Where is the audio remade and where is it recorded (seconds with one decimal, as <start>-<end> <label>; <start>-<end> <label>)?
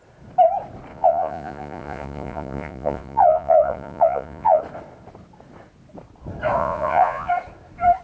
0.0-0.9 recorded; 0.9-4.6 remade; 4.6-6.6 recorded; 6.6-7.3 remade; 7.3-8.0 recorded